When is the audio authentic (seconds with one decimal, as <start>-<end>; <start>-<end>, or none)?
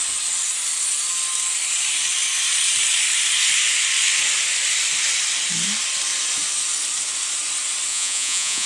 0.0-7.9